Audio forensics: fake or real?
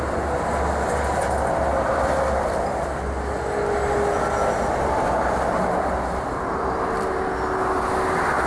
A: real